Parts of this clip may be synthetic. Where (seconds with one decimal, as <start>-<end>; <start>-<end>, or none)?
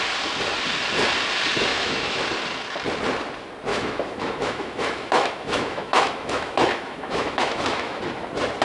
1.7-2.2; 3.7-8.0